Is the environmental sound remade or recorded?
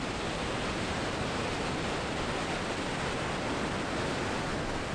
recorded